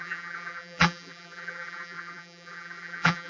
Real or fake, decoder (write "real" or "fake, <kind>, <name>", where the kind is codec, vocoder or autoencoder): fake, vocoder, BigVGAN v2